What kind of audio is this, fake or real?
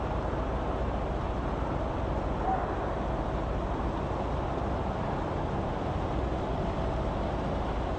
real